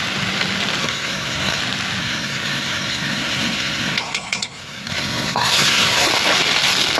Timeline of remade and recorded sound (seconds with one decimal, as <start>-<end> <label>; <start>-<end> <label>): 0.0-0.8 recorded; 0.8-1.6 remade; 1.6-2.0 recorded; 2.0-6.1 remade; 6.1-7.0 recorded